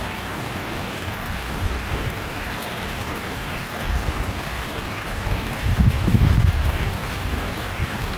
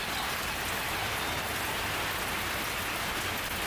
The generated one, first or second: first